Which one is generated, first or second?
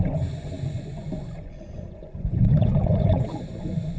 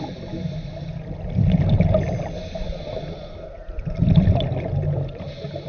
first